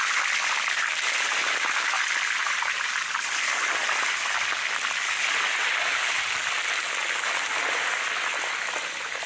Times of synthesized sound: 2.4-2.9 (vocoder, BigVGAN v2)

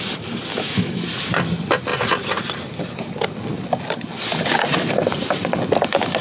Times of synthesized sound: 0.5-1.0 (autoencoder, DAC-VAE)

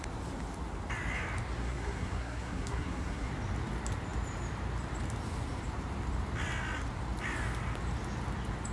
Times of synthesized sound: 1.6-3.3 (codec, SNAC)

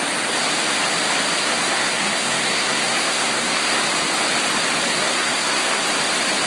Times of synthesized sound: 1.4-3.8 (codec, SNAC); 4.9-5.9

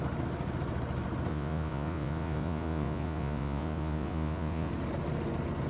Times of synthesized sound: 1.3-4.7 (vocoder, Vocos)

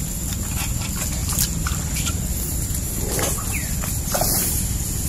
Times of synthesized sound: 3.6-4.5 (vocoder, BigVGAN v2)